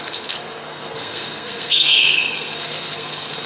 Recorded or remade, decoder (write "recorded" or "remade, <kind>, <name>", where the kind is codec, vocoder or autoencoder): remade, codec, SNAC